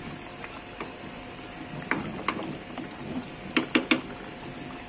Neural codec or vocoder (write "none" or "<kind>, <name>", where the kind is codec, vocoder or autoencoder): none